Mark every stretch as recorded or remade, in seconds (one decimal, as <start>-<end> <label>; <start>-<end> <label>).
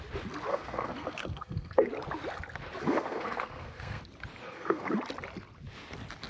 0.0-0.5 recorded; 0.5-1.9 remade; 1.9-2.8 recorded; 2.8-4.0 remade; 4.0-4.4 recorded; 4.4-4.9 remade; 4.9-6.3 recorded